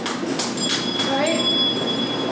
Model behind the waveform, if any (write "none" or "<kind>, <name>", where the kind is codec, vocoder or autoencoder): none